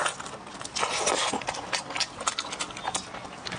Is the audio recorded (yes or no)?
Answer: yes